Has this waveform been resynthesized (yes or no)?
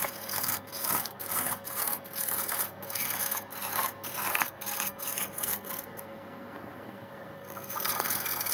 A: yes